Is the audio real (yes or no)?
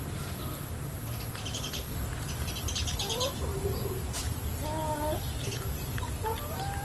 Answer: yes